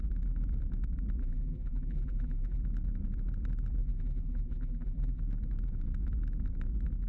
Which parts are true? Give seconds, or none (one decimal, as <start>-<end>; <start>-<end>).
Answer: 0.0-1.2; 2.6-3.8; 5.2-7.1